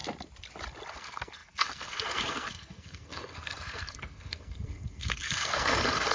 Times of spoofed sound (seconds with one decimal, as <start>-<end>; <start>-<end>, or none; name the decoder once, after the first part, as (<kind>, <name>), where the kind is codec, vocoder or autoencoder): 0.9-6.1 (codec, SNAC)